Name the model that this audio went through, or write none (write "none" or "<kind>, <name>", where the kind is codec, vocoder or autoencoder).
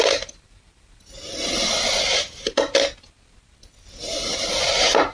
none